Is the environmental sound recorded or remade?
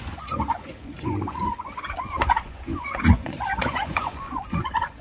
remade